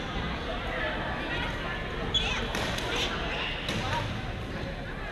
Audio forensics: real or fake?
real